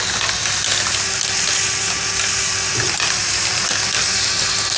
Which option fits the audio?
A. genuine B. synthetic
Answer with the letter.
A